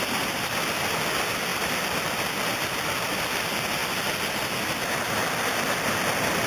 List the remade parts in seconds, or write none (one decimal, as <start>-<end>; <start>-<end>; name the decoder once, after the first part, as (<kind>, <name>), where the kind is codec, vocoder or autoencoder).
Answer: 1.5-2.1 (vocoder, BigVGAN v2); 3.8-4.6; 5.2-6.5